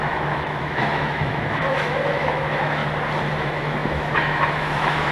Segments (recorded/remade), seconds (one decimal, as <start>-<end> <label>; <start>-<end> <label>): 0.0-2.8 remade; 2.8-3.4 recorded; 3.4-5.1 remade